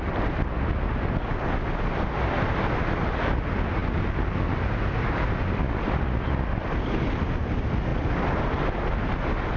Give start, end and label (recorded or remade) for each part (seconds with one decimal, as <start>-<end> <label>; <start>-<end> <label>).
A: 0.0-9.6 recorded